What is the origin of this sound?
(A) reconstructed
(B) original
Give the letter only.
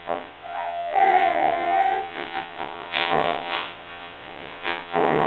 A